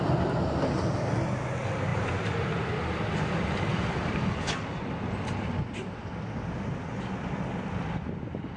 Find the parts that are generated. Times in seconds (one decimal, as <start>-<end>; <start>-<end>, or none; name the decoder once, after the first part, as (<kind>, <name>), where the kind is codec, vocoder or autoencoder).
3.7-5.0 (vocoder, BigVGAN v2)